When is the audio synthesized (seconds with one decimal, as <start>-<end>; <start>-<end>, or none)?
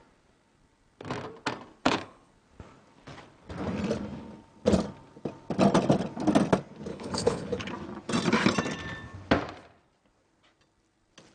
1.8-2.3; 6.9-7.7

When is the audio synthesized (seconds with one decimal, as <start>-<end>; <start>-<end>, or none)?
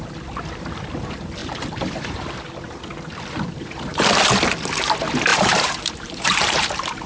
1.4-2.2; 5.3-7.1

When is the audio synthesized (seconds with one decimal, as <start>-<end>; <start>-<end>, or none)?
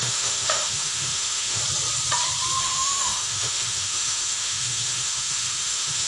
0.0-1.6; 2.6-6.1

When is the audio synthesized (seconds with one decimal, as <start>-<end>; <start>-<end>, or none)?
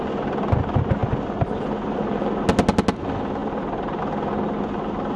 none